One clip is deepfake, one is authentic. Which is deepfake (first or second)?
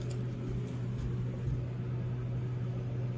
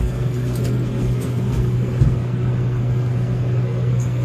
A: second